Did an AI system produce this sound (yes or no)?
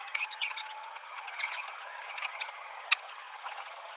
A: yes